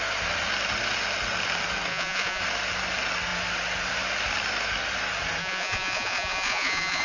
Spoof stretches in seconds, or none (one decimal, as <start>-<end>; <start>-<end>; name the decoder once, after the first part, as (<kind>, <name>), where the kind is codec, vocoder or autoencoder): 1.9-2.4 (vocoder, Vocos); 5.4-7.0